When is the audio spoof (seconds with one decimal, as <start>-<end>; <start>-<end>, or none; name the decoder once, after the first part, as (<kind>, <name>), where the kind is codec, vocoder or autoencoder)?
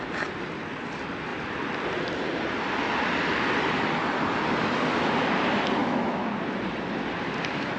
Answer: 5.8-6.3 (autoencoder, DAC-VAE)